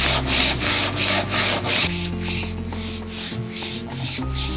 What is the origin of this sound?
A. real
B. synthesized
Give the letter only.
A